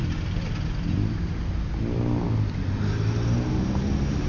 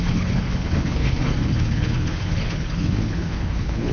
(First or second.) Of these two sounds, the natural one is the first